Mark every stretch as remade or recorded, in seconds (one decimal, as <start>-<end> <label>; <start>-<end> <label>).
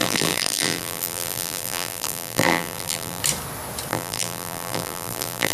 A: 0.0-3.2 remade; 3.2-3.9 recorded; 3.9-5.5 remade